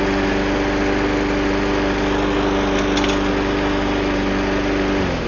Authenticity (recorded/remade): recorded